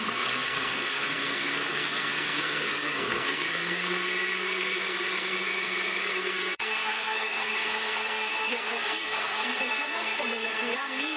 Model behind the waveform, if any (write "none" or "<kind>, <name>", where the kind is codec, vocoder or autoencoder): codec, SNAC